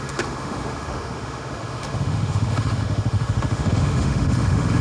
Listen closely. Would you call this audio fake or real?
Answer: fake